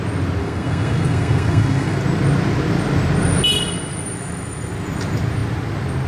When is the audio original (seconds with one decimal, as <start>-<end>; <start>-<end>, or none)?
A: 0.0-0.4; 2.0-6.1